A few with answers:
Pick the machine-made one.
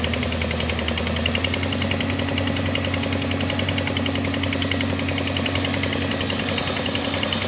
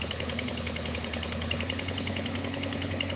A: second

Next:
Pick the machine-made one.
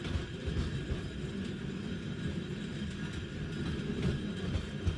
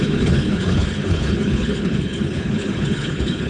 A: second